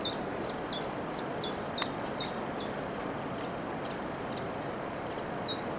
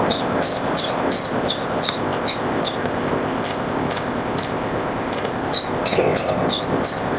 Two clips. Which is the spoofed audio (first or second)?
second